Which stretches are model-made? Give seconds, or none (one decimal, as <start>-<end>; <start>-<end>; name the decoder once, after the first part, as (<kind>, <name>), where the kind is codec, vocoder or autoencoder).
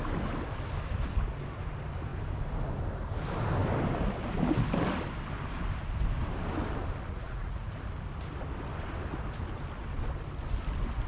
7.1-7.7 (vocoder, Vocos)